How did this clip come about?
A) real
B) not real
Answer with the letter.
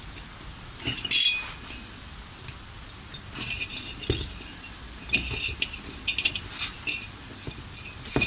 A